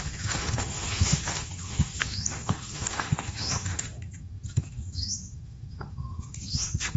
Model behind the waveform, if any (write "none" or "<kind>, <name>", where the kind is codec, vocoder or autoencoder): autoencoder, DAC-VAE